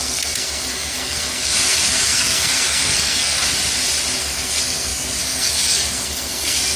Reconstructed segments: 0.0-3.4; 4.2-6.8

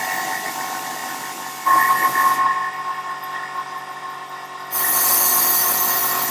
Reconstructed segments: none

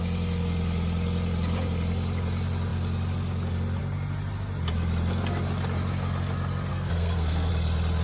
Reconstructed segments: 6.7-7.5

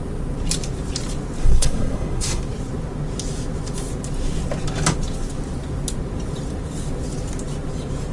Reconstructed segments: 1.4-2.4

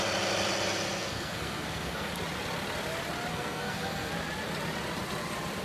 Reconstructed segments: 1.0-2.1; 3.3-4.1

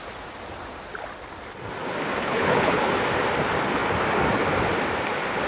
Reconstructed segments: 2.2-2.9

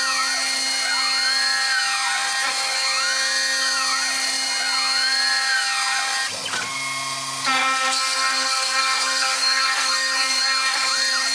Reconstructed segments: 7.6-10.4